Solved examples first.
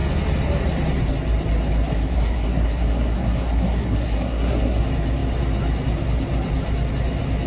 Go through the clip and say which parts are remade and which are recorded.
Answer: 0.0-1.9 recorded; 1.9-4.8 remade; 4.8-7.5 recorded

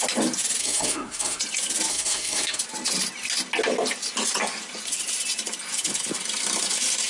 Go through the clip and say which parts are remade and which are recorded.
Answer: 0.0-0.6 recorded; 0.6-1.4 remade; 1.4-1.9 recorded; 1.9-2.6 remade; 2.6-7.1 recorded

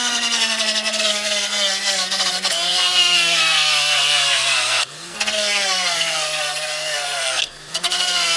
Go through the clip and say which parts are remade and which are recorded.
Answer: 0.0-8.4 remade

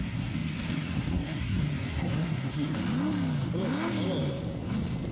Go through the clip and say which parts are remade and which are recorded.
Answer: 0.0-2.8 remade; 2.8-5.1 recorded

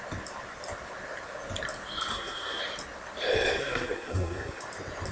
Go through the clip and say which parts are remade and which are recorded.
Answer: 0.0-2.1 recorded; 2.1-2.6 remade; 2.6-3.6 recorded; 3.6-4.6 remade; 4.6-5.1 recorded

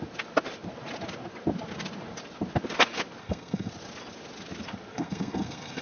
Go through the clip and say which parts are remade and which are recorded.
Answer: 0.0-3.2 recorded; 3.2-3.7 remade; 3.7-4.9 recorded; 4.9-5.8 remade